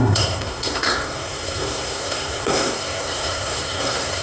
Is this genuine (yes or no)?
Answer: no